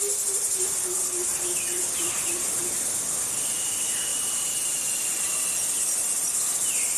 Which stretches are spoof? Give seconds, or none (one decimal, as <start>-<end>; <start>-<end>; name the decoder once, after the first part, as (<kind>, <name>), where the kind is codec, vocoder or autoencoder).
1.3-2.6 (vocoder, BigVGAN v2); 4.1-5.3